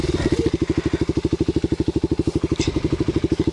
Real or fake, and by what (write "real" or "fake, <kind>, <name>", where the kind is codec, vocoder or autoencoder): real